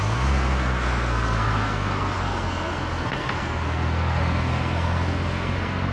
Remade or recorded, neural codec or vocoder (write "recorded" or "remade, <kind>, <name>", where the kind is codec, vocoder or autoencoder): remade, codec, SNAC